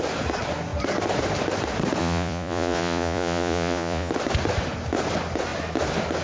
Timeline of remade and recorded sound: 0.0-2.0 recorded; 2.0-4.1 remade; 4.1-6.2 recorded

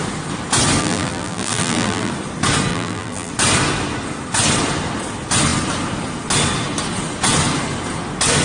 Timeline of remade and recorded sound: 0.0-0.8 recorded; 0.8-2.1 remade; 2.1-2.7 recorded; 2.7-3.3 remade; 3.3-8.4 recorded

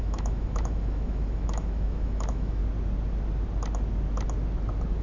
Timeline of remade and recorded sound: 0.0-2.6 remade; 2.6-5.0 recorded

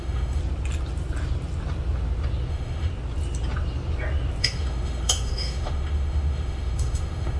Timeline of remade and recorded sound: 0.0-0.4 remade; 0.4-2.5 recorded; 2.5-2.9 remade; 2.9-4.4 recorded; 4.4-7.4 remade

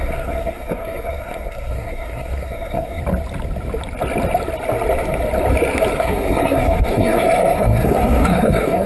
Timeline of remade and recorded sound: 0.0-3.0 remade; 3.0-6.0 recorded; 6.0-8.9 remade